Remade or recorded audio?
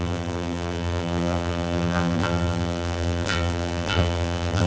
remade